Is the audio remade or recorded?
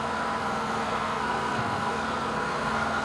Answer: remade